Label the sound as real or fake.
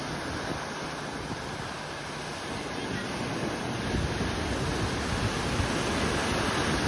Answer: real